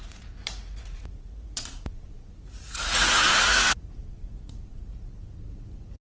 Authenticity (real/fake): fake